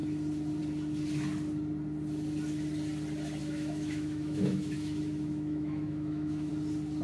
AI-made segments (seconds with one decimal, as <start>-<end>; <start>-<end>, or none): 3.4-6.5